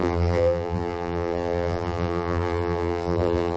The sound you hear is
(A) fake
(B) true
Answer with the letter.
A